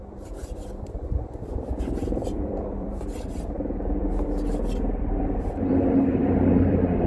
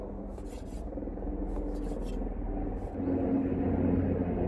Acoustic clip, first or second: second